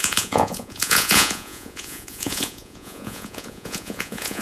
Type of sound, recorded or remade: remade